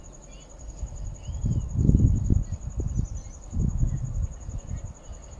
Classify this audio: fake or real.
real